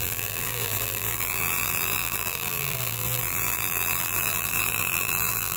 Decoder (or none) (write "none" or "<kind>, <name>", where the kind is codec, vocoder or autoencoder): vocoder, BigVGAN v2